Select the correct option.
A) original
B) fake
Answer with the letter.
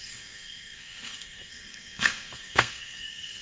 B